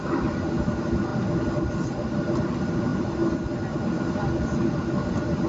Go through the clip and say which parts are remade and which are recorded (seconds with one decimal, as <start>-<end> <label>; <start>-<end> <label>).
0.0-5.5 recorded